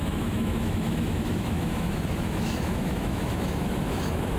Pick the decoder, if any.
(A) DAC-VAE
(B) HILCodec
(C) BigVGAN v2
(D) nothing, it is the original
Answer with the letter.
A